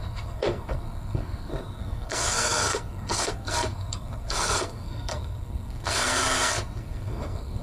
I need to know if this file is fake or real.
fake